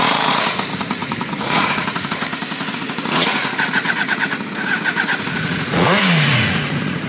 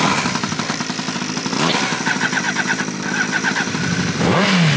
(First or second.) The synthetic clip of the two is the first